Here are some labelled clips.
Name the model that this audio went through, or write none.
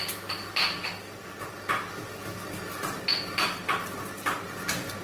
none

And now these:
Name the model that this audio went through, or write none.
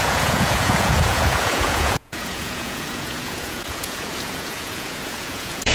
vocoder, Vocos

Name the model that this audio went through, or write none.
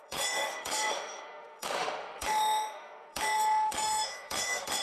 autoencoder, DAC-VAE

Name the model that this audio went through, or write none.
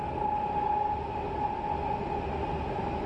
none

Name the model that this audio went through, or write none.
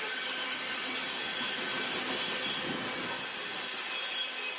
none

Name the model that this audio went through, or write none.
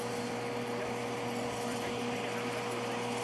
none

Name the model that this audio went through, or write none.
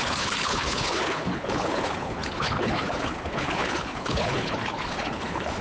codec, HILCodec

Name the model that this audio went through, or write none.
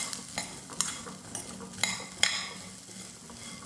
none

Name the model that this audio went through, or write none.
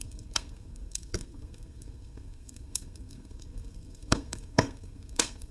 codec, SNAC